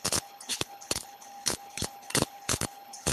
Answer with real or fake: fake